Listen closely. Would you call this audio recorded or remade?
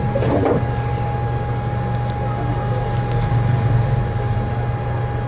recorded